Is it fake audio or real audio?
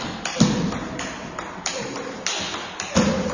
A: real